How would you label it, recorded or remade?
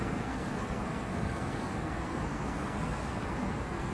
remade